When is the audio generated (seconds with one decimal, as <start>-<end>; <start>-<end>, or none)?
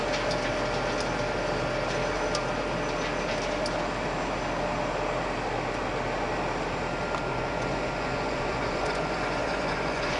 7.3-10.2